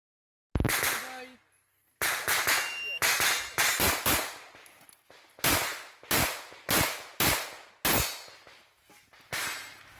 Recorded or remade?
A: recorded